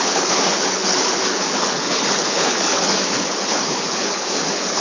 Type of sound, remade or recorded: remade